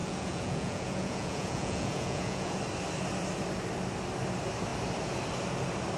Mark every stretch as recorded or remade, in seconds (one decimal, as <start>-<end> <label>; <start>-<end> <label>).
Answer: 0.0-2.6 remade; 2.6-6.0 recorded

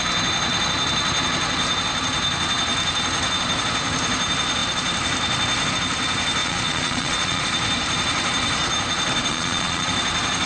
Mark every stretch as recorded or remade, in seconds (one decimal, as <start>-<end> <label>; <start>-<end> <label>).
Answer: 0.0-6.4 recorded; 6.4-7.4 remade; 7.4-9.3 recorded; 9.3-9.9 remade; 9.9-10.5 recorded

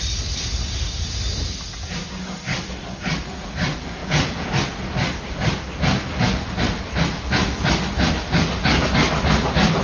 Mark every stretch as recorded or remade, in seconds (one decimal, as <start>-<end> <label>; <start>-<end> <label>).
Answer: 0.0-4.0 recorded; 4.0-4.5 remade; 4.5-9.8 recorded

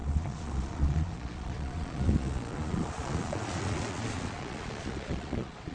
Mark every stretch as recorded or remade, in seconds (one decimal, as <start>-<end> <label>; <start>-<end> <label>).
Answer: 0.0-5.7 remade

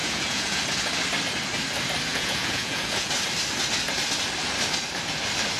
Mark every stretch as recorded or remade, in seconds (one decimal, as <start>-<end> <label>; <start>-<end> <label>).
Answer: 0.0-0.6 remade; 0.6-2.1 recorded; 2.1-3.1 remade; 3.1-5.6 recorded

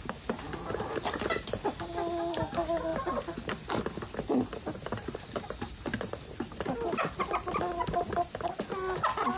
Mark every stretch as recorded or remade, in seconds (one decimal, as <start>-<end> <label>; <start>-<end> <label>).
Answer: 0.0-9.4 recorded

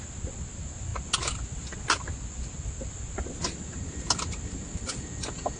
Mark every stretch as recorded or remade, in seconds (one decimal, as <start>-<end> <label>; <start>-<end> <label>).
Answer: 0.0-5.6 recorded